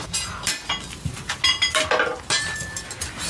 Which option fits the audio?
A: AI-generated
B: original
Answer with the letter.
B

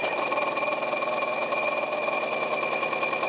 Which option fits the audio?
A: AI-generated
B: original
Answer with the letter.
B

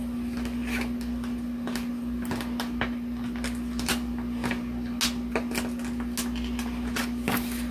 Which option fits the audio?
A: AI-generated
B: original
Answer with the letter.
B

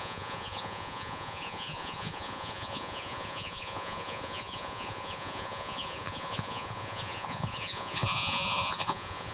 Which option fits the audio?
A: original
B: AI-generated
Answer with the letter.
B